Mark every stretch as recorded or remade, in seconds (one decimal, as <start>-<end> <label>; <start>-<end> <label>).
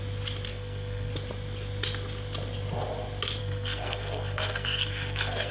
0.0-0.5 recorded; 0.5-1.1 remade; 1.1-3.4 recorded; 3.4-5.5 remade